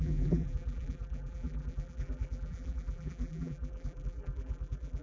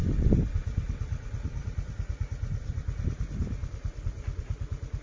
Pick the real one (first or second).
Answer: second